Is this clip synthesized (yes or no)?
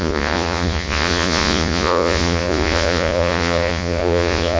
yes